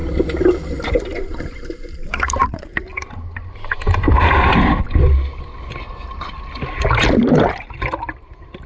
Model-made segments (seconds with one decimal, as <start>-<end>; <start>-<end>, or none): 0.7-2.9; 6.7-8.7